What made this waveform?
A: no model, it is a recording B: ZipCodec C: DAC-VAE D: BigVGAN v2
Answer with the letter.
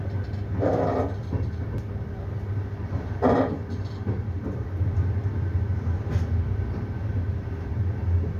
A